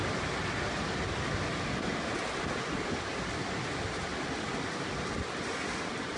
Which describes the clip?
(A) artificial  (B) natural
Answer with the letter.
B